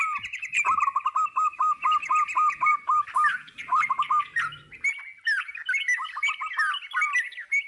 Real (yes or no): yes